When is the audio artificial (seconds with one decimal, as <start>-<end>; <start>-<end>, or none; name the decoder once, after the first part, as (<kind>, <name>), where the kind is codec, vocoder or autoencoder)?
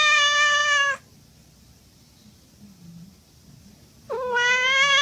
none